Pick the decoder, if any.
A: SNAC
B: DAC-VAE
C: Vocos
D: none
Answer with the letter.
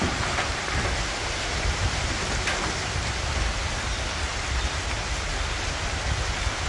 D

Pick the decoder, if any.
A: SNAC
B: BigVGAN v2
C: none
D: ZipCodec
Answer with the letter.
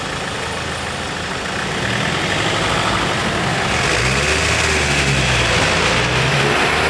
C